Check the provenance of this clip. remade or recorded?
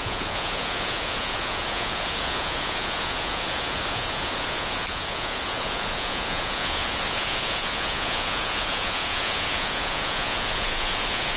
remade